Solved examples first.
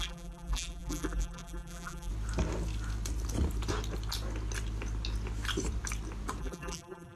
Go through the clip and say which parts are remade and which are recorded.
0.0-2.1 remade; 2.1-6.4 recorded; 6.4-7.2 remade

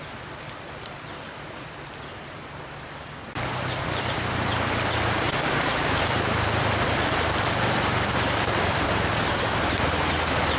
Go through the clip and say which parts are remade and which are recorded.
0.0-10.6 remade

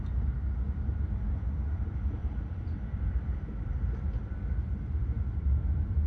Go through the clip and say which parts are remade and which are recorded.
0.0-2.2 recorded; 2.2-6.1 remade

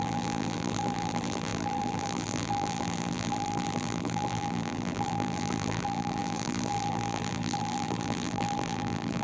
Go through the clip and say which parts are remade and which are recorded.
0.0-9.2 remade

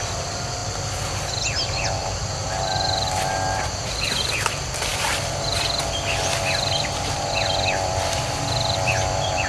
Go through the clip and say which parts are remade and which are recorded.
0.0-0.6 remade; 0.6-1.3 recorded; 1.3-9.5 remade

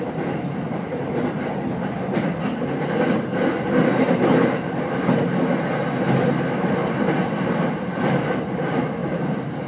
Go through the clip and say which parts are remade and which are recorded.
0.0-6.8 recorded; 6.8-8.0 remade; 8.0-9.0 recorded; 9.0-9.7 remade

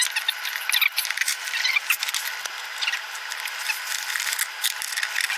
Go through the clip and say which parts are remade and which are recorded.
0.0-0.9 recorded; 0.9-2.0 remade; 2.0-5.4 recorded